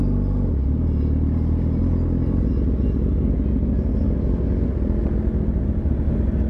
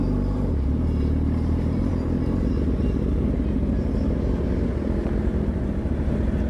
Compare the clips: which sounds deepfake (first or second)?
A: second